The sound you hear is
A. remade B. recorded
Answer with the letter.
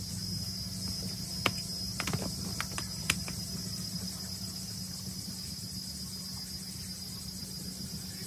B